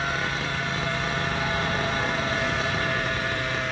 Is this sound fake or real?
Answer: real